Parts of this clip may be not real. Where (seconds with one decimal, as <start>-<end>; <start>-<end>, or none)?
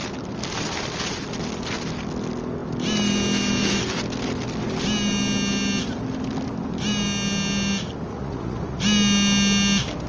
8.1-8.8